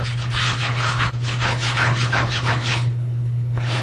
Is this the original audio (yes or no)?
no